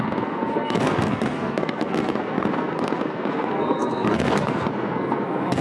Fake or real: fake